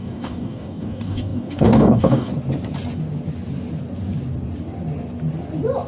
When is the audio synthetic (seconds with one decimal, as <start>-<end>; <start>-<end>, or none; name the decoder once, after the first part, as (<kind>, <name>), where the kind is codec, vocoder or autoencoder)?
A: 0.0-2.3 (codec, DAC)